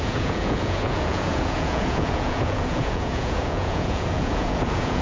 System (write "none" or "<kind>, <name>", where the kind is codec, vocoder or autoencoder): vocoder, Vocos